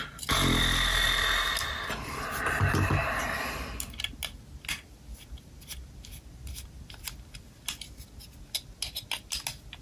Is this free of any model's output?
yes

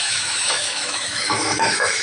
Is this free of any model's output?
no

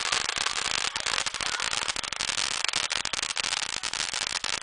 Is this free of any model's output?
yes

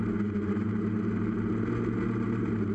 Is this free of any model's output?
yes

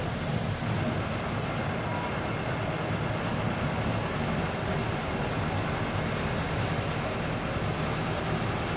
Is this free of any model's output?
yes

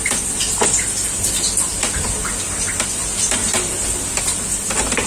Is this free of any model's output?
yes